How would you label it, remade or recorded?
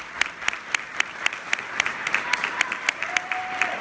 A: remade